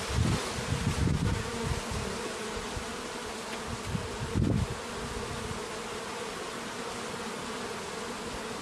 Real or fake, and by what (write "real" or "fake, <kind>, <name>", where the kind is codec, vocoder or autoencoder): real